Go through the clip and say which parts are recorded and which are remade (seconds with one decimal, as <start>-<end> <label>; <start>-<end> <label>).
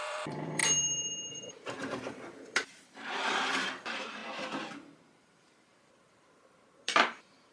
0.0-0.6 remade; 0.6-1.3 recorded; 1.3-4.2 remade; 4.2-5.2 recorded; 5.2-7.5 remade